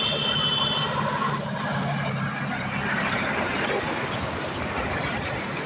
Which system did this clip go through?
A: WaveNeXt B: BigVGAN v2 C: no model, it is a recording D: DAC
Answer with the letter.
C